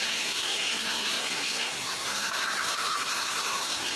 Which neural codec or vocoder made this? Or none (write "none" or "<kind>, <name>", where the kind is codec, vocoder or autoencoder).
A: codec, SNAC